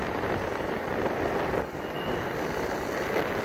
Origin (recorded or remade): recorded